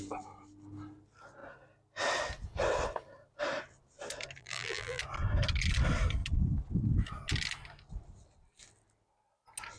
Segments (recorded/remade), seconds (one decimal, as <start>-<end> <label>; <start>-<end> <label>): 0.0-4.4 recorded; 4.4-5.0 remade; 5.0-9.8 recorded